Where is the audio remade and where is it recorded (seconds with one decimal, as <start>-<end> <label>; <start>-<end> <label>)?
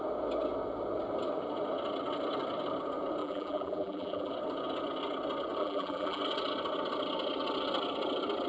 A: 0.0-3.2 recorded; 3.2-4.3 remade; 4.3-5.6 recorded; 5.6-6.2 remade; 6.2-8.5 recorded